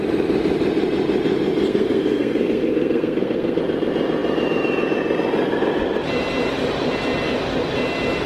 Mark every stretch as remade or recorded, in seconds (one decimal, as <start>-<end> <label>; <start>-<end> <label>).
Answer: 0.0-1.7 recorded; 1.7-3.6 remade; 3.6-8.3 recorded